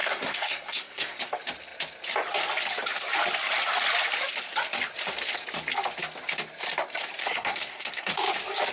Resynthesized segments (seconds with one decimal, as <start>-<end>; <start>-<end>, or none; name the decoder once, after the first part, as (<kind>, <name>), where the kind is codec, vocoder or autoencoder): 0.0-1.2 (codec, SNAC); 7.2-8.1